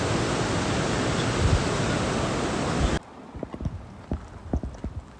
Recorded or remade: recorded